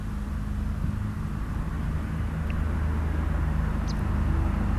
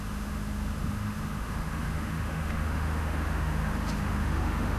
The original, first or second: first